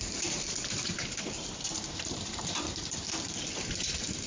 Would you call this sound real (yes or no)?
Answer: no